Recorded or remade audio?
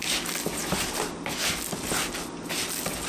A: recorded